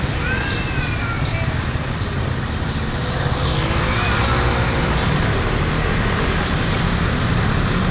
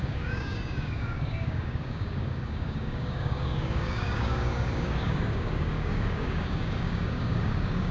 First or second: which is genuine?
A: first